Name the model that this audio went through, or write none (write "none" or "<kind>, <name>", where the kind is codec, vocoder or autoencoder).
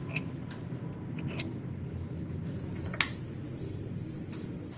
none